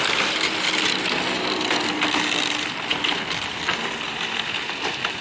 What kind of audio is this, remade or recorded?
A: recorded